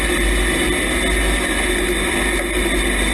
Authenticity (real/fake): real